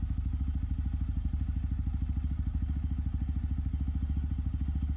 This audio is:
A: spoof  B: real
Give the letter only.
B